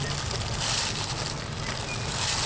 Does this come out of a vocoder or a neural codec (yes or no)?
no